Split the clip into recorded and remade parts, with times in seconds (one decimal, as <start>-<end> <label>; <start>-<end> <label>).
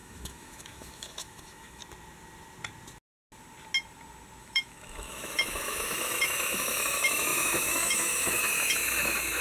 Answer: 0.0-1.8 remade; 1.8-4.4 recorded; 4.4-9.4 remade